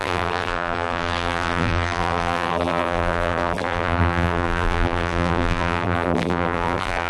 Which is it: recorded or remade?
remade